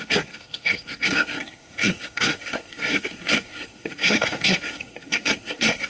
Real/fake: fake